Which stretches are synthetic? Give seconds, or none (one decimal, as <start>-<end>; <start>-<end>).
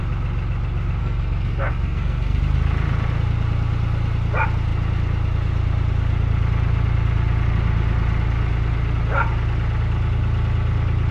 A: 1.0-2.4